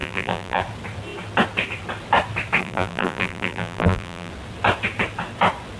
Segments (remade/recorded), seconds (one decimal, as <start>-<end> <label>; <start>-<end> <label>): 0.0-0.6 remade; 0.6-2.6 recorded; 2.6-4.3 remade; 4.3-5.8 recorded